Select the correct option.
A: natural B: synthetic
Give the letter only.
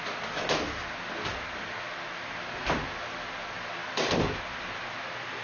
A